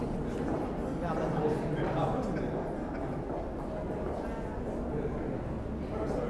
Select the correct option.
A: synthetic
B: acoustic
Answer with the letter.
B